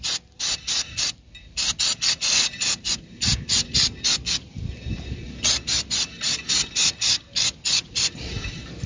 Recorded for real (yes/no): yes